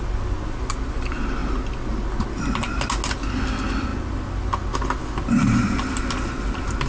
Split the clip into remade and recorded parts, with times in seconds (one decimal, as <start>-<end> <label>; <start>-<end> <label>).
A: 0.0-6.9 recorded